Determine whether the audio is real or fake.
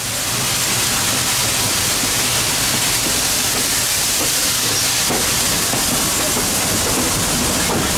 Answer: real